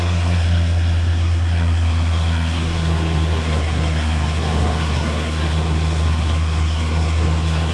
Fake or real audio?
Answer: fake